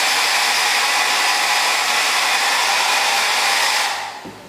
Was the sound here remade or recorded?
recorded